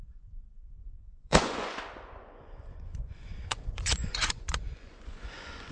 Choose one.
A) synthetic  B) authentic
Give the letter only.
A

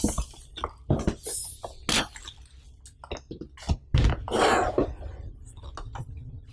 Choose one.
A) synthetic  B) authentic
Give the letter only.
B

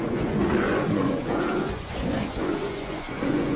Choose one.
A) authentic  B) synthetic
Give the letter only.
B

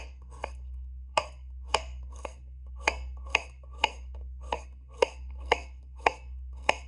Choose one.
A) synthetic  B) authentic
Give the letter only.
A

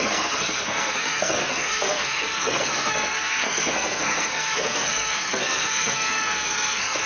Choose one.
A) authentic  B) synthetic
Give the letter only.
B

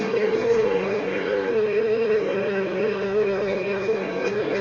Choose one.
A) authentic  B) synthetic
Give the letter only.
B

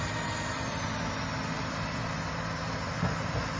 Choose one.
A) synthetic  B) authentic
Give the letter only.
B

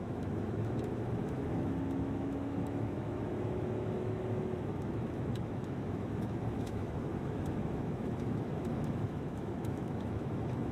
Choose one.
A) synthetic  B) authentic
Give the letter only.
A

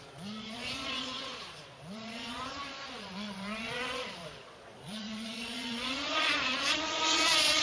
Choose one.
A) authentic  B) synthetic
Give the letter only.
B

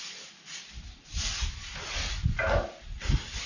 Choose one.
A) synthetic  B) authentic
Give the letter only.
B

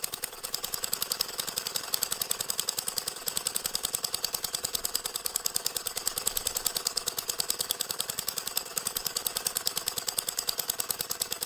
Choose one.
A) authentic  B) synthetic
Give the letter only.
B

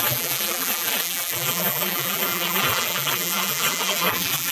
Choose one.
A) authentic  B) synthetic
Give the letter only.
B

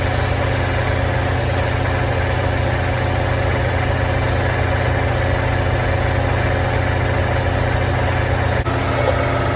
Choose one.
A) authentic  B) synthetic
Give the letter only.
A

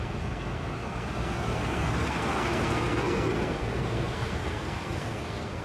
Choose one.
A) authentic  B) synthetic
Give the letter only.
B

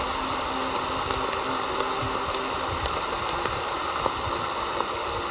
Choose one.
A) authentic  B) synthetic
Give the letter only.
A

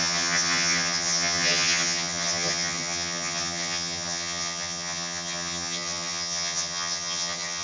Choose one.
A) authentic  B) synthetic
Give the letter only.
B